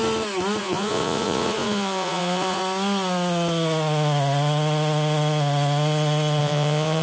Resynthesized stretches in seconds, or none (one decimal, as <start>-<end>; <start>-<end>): 0.6-2.6; 6.4-7.0